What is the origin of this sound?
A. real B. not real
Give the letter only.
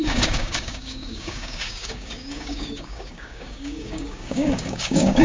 B